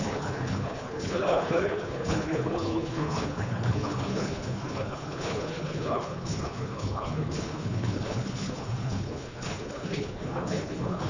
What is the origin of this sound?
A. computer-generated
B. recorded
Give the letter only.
A